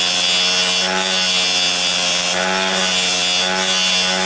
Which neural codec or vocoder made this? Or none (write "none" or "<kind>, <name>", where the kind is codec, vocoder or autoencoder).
none